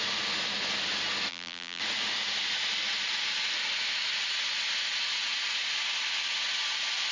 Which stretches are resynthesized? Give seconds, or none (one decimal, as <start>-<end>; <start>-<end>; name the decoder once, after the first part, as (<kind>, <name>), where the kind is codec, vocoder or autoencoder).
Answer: 1.3-1.8 (vocoder, BigVGAN v2)